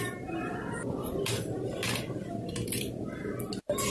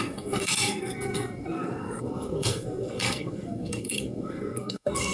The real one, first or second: first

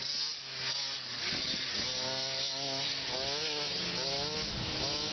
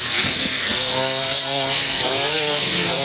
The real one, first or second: first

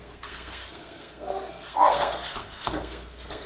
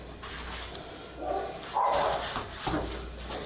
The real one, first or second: second